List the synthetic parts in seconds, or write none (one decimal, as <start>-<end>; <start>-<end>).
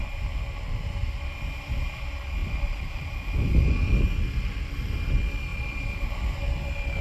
2.4-3.2